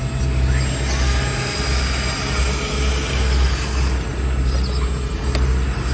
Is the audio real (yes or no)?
yes